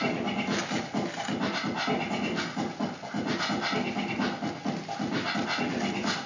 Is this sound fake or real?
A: real